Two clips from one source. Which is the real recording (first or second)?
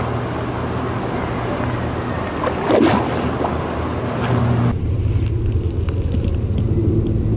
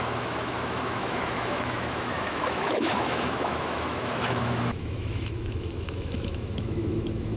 first